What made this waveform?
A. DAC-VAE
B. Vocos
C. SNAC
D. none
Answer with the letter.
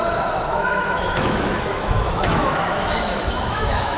A